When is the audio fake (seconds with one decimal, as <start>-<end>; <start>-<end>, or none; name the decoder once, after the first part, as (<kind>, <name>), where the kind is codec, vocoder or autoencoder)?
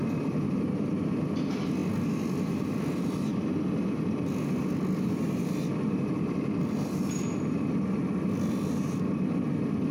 none